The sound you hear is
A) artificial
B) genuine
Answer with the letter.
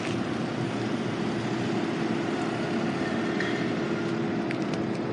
B